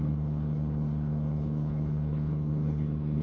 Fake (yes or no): yes